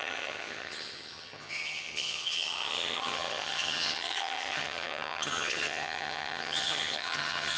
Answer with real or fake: fake